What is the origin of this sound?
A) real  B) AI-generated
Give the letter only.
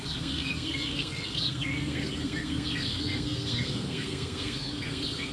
B